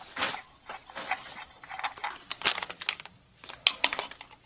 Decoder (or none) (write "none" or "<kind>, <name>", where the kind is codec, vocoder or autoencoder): none